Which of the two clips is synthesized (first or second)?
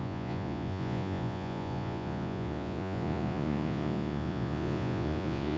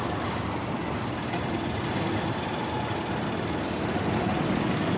first